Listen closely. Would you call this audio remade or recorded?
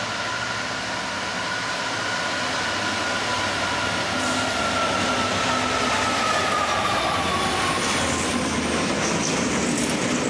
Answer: recorded